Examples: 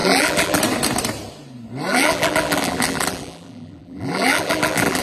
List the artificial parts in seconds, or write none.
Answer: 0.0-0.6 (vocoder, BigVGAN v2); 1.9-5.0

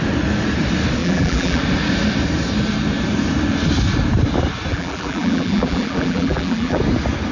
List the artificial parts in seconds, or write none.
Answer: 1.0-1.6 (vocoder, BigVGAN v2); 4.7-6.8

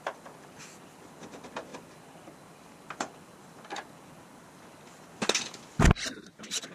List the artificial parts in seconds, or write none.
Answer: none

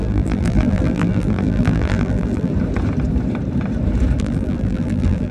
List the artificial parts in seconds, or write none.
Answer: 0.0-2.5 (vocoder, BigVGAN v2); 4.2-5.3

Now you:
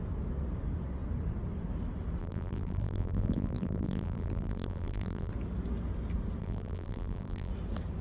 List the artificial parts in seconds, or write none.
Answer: 2.2-5.3 (vocoder, BigVGAN v2); 6.4-7.5

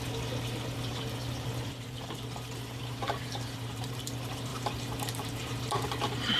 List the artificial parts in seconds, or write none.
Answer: 0.9-4.1 (vocoder, BigVGAN v2); 4.5-6.4